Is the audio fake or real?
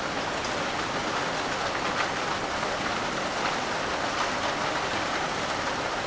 real